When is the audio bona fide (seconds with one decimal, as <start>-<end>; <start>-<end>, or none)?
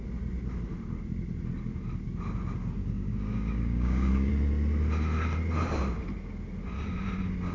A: 0.0-2.8; 4.3-7.5